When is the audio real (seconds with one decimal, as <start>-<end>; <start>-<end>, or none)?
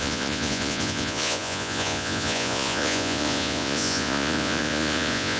none